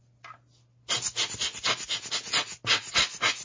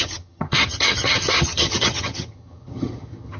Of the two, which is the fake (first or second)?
second